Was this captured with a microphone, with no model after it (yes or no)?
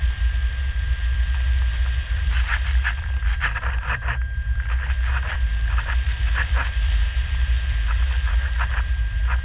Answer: yes